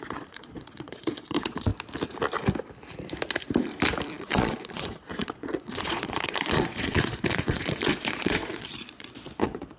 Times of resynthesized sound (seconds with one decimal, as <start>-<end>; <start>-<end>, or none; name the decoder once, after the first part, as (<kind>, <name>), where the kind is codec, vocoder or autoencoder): 0.0-1.7 (vocoder, Vocos); 4.2-9.8